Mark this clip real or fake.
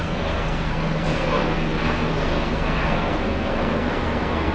fake